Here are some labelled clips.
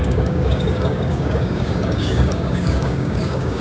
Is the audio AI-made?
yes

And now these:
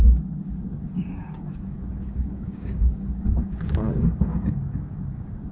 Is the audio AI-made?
yes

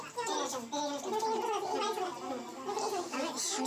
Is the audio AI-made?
no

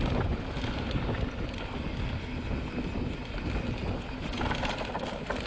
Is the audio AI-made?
no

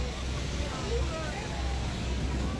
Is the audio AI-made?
yes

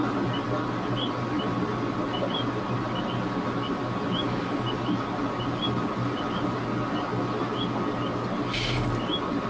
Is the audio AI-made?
no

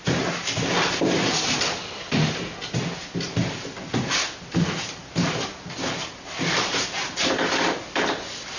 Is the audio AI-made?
no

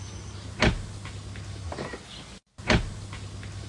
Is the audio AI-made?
no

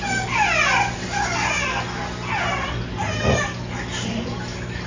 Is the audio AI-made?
no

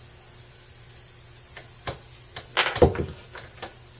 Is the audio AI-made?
no